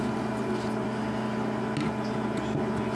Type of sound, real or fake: real